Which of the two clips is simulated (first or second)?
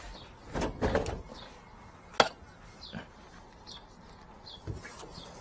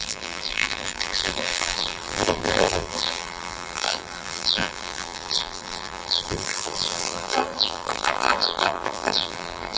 second